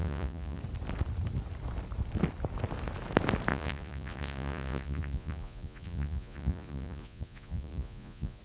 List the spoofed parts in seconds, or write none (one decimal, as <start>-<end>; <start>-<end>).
0.0-0.6; 3.5-8.4